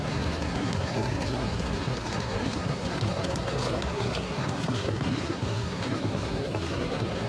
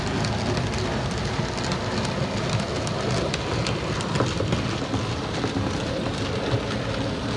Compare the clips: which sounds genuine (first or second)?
second